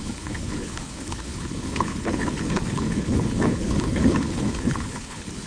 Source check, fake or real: fake